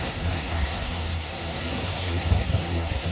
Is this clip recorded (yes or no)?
no